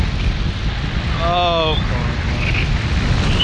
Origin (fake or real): real